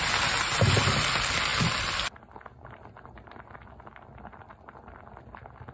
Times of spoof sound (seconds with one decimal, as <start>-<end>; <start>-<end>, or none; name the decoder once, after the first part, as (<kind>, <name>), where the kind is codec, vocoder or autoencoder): none